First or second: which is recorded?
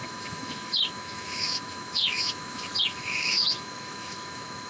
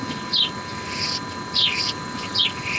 second